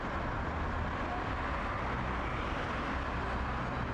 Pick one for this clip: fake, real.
real